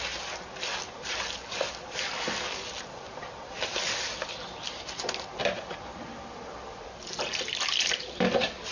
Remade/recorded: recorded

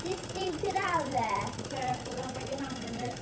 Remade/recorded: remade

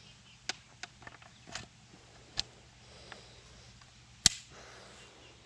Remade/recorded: recorded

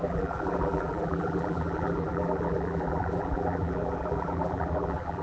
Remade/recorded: remade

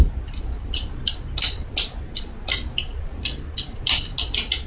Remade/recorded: recorded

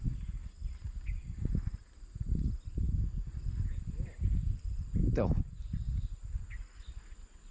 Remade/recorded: recorded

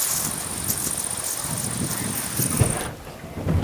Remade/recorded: recorded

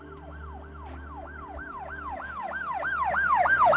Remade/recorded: recorded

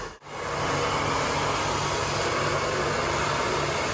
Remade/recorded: recorded